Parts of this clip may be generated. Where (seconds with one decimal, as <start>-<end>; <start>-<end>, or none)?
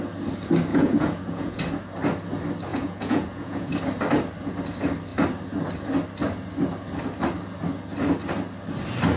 0.7-1.6; 2.7-3.7